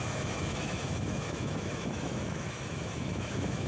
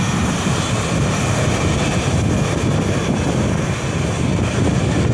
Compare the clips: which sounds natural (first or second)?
second